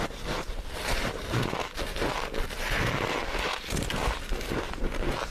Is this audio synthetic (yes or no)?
no